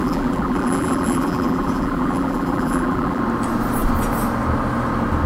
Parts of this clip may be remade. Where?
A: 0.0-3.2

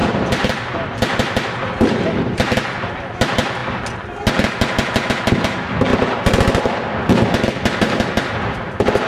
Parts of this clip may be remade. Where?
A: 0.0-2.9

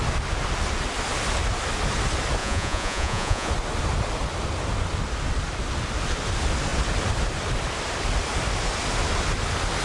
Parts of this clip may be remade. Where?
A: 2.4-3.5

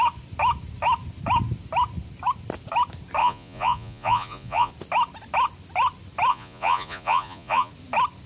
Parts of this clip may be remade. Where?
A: 3.2-4.7; 6.3-7.7